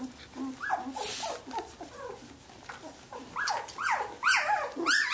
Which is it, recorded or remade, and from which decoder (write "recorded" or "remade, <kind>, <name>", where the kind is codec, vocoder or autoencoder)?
recorded